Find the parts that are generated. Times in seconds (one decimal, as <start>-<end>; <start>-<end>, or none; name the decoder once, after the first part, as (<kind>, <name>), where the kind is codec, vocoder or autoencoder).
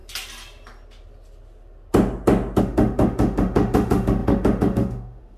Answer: 2.6-5.4 (autoencoder, DAC-VAE)